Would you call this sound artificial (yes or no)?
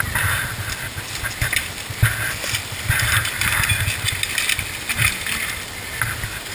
no